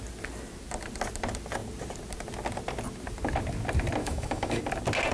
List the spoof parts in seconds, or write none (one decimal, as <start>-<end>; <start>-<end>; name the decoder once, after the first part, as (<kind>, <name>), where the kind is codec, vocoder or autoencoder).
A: 4.0-4.6 (autoencoder, DAC-VAE)